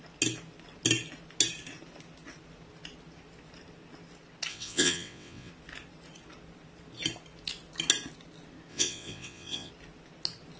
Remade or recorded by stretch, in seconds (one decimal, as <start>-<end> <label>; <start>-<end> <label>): 0.0-4.5 recorded; 4.5-5.5 remade; 5.5-8.7 recorded; 8.7-9.7 remade; 9.7-10.6 recorded